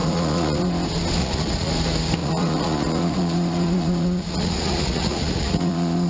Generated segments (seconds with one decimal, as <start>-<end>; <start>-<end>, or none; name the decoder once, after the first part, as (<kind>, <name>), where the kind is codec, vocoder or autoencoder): 0.0-0.6 (vocoder, Vocos); 1.2-1.7; 2.2-6.1